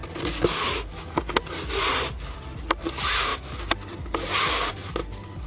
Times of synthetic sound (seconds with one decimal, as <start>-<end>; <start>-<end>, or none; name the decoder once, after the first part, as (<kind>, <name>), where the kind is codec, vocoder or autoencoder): none